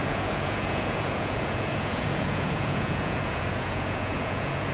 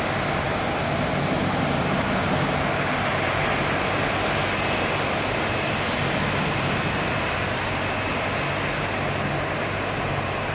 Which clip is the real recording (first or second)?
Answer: second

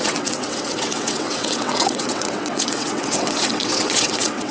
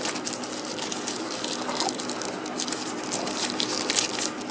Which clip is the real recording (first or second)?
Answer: second